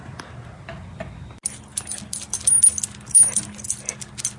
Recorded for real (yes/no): yes